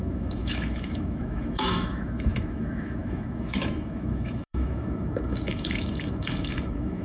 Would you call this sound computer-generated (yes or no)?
yes